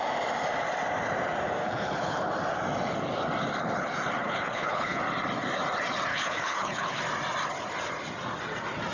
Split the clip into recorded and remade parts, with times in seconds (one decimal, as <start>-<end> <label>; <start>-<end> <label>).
0.0-1.6 recorded; 1.6-2.3 remade; 2.3-4.2 recorded; 4.2-5.0 remade; 5.0-6.1 recorded; 6.1-7.0 remade; 7.0-8.9 recorded